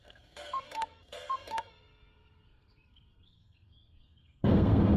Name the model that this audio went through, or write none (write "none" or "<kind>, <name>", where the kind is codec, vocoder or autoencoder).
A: codec, SNAC